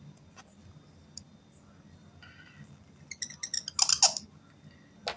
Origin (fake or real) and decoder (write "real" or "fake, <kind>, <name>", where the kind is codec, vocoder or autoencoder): real